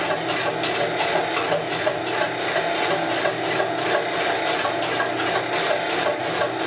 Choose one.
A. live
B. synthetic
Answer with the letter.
A